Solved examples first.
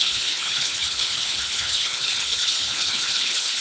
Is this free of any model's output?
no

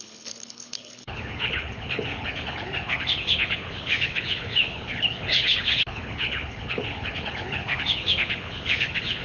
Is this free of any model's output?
no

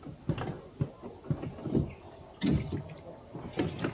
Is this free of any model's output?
yes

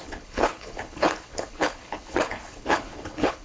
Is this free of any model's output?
no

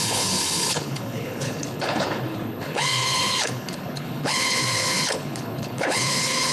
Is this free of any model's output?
no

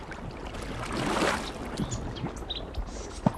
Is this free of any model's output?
yes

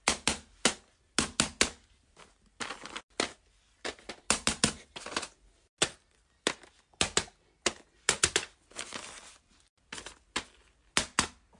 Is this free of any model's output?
yes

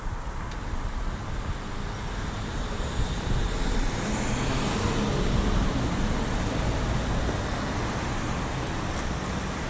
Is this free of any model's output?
yes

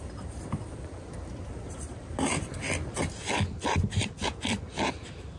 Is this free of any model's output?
yes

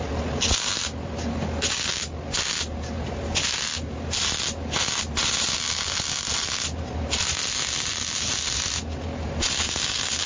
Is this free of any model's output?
yes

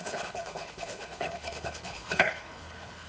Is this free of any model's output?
no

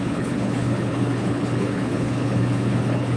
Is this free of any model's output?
no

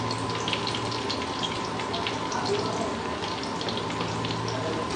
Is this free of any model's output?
yes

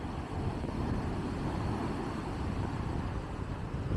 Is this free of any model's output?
yes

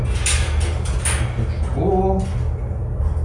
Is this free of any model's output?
yes